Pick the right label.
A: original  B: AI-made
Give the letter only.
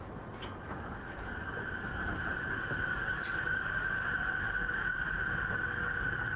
A